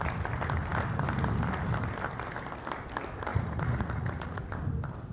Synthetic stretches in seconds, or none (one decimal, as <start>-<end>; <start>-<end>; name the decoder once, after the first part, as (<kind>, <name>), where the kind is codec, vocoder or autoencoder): 3.3-4.5 (vocoder, Vocos)